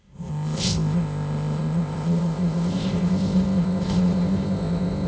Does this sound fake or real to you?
fake